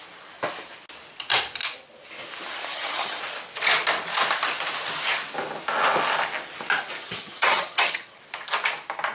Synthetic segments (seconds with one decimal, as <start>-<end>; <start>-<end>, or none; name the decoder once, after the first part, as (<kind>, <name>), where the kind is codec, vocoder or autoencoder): 2.7-3.2 (vocoder, HiFi-GAN); 7.0-8.2